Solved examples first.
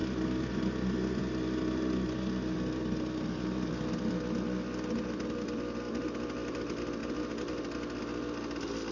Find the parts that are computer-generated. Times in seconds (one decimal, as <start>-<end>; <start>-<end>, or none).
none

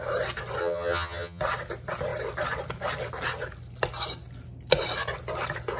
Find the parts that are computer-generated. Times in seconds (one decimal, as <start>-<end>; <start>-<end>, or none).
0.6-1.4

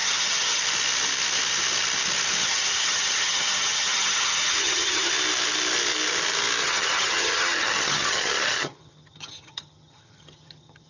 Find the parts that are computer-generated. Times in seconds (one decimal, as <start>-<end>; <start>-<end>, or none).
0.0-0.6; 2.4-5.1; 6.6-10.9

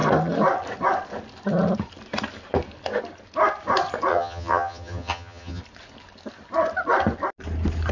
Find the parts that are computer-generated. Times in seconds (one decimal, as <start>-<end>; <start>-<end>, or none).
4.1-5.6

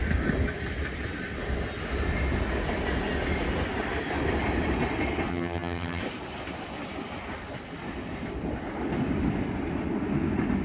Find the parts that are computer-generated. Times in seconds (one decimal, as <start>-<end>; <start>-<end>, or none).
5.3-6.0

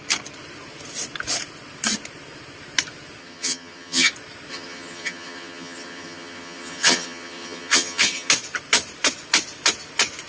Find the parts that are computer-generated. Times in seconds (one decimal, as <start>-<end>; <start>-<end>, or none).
3.2-4.1; 4.5-8.3

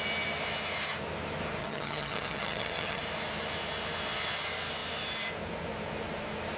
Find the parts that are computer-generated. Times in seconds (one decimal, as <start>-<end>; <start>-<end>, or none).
1.6-3.0

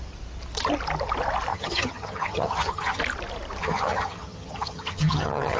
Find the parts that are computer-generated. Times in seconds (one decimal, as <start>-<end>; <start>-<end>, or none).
1.5-3.0; 3.6-5.6